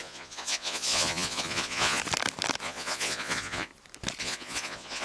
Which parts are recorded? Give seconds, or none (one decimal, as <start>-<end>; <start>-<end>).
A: 2.0-2.6; 3.7-4.2